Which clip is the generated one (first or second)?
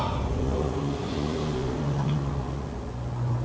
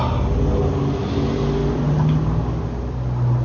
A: first